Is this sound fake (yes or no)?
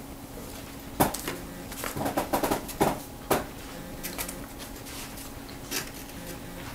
no